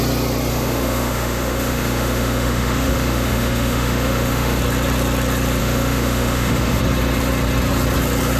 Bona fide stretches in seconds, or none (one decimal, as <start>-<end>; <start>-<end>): 0.0-0.5; 4.6-5.6; 6.8-8.4